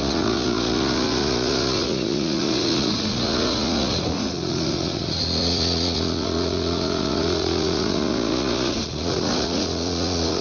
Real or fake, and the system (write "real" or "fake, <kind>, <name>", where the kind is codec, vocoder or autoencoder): fake, vocoder, Vocos